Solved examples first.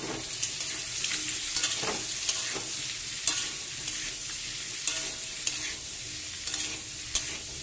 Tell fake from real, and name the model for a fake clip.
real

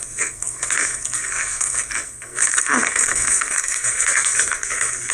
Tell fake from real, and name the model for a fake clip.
fake, codec, SNAC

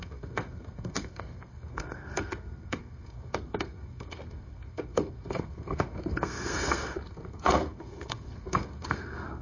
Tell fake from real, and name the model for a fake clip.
fake, codec, SNAC